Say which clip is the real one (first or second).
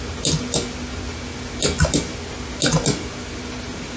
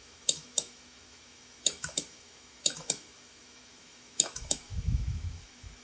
first